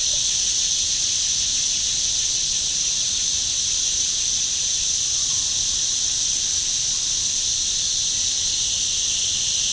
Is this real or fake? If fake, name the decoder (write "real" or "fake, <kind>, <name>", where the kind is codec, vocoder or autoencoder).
real